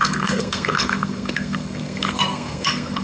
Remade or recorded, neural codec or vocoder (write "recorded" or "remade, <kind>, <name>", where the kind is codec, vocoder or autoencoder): remade, codec, SNAC